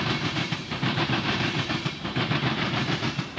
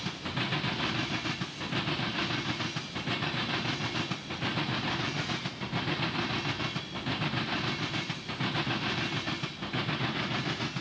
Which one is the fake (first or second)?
first